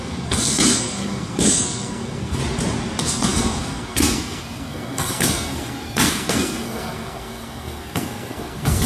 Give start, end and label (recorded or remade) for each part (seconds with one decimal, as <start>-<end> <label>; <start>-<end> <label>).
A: 0.0-2.4 remade; 2.4-3.0 recorded; 3.0-8.9 remade